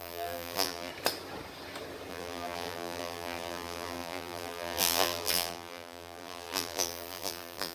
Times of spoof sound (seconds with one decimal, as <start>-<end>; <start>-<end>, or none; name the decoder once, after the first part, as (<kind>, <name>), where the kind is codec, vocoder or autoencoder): 0.0-0.9 (vocoder, BigVGAN v2); 2.1-7.7

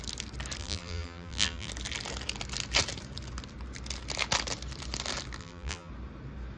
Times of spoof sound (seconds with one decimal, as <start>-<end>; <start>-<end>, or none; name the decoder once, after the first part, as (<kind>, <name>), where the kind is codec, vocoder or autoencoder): 0.6-1.7 (vocoder, BigVGAN v2); 5.4-5.9

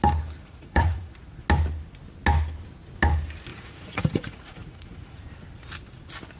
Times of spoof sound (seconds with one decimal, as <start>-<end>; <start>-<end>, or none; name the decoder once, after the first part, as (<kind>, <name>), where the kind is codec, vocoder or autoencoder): 0.4-1.1 (vocoder, Vocos); 3.5-5.2

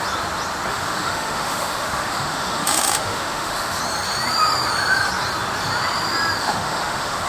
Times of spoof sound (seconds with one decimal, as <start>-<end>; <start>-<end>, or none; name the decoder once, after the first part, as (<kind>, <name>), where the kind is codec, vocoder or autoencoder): 0.7-3.8 (autoencoder, DAC-VAE); 6.4-7.3

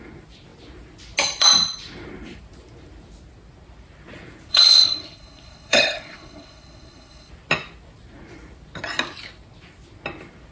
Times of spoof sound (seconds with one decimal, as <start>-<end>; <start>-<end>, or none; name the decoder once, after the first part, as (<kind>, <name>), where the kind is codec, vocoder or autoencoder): 4.5-7.3 (codec, HILCodec)